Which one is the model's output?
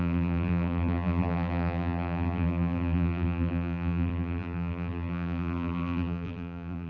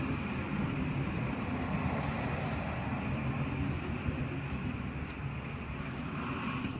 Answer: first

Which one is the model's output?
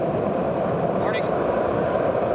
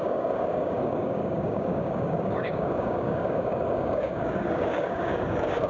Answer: second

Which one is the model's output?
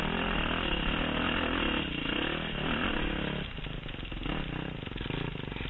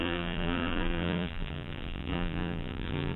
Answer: second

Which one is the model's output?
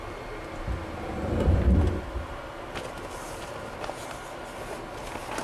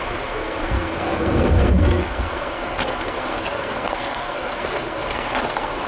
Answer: second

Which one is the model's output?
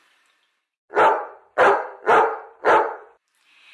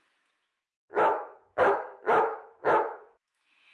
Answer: second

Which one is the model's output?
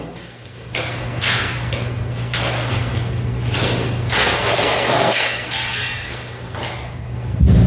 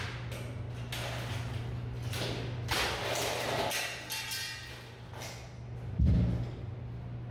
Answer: first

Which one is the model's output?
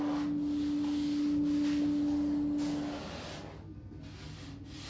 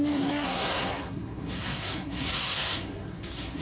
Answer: second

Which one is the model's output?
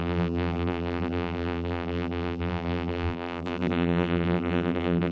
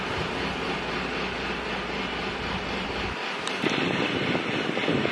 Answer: first